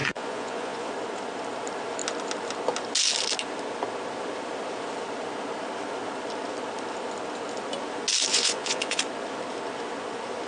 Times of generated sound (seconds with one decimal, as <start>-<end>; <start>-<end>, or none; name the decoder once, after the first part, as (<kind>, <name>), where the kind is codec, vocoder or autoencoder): 0.0-0.9 (vocoder, Vocos); 8.3-9.0

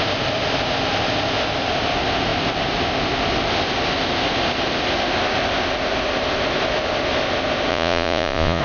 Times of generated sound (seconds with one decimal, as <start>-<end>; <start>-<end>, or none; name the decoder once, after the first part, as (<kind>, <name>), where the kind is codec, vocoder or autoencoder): 7.7-8.6 (vocoder, Vocos)

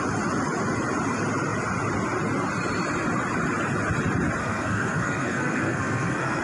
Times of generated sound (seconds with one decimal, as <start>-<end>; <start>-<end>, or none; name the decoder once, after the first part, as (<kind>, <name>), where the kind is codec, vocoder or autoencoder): 4.4-6.4 (codec, SNAC)